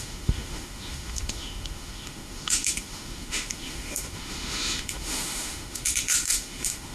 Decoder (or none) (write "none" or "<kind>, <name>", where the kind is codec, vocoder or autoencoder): autoencoder, DAC-VAE